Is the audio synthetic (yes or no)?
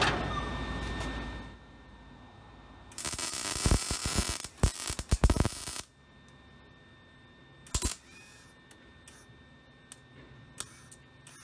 no